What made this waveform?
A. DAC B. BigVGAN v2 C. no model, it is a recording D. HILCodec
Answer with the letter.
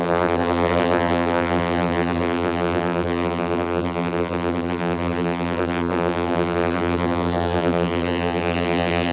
B